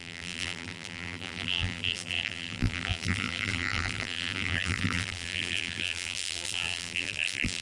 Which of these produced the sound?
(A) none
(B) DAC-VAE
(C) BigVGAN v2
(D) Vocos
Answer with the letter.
C